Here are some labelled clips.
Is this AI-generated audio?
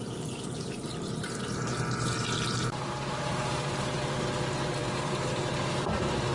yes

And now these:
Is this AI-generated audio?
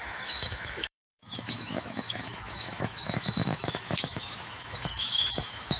yes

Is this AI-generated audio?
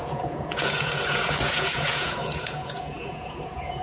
yes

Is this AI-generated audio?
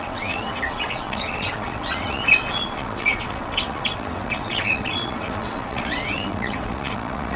yes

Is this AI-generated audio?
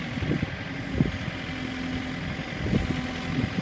no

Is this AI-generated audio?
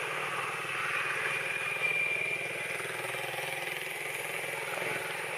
no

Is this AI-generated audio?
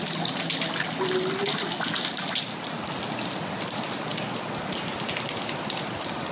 no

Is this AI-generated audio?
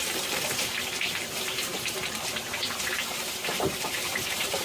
yes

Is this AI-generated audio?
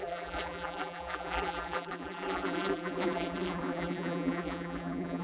yes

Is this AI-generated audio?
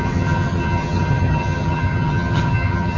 yes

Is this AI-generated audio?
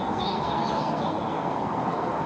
yes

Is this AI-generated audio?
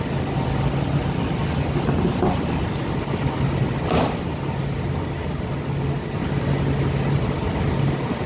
no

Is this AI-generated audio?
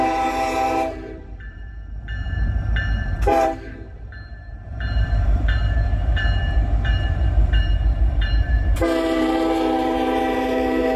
yes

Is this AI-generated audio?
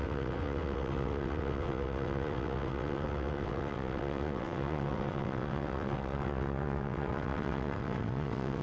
yes